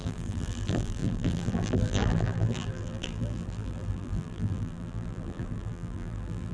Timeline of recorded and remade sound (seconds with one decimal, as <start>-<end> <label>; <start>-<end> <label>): 0.0-6.5 remade